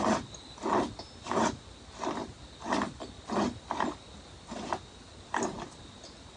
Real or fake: real